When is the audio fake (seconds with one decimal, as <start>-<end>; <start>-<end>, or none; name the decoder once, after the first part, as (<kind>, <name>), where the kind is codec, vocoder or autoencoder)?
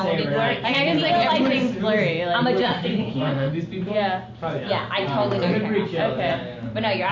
2.6-3.5 (autoencoder, DAC-VAE)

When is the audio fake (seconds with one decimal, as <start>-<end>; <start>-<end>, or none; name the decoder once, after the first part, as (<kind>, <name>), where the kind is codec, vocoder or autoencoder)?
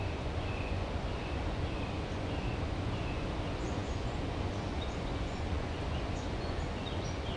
0.0-7.4 (vocoder, Vocos)